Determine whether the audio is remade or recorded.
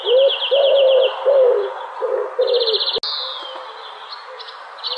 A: recorded